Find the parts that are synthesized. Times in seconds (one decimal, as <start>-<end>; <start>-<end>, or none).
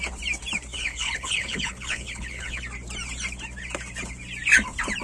0.7-2.6